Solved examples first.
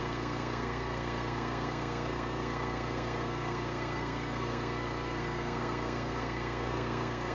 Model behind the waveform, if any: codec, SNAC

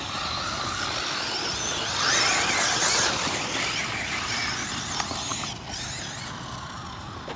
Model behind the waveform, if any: none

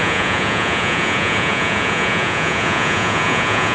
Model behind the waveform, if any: vocoder, Vocos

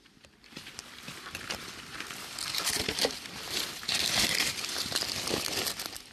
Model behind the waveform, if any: none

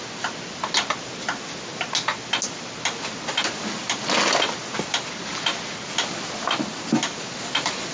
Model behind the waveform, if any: none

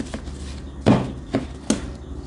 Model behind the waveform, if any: none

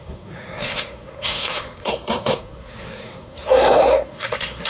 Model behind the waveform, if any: codec, SNAC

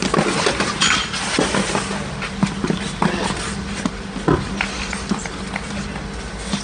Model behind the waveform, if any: none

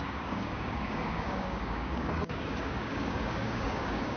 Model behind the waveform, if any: codec, DAC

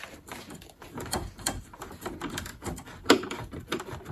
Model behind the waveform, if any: vocoder, BigVGAN v2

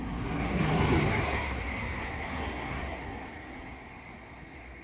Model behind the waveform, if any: codec, SNAC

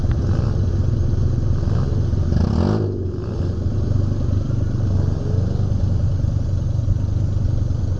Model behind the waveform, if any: none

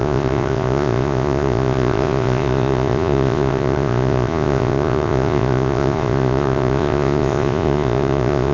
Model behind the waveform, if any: vocoder, Vocos